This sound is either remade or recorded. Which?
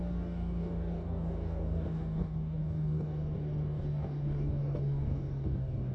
remade